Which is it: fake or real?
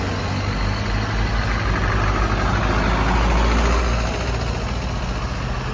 real